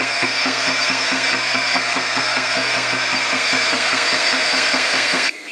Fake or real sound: fake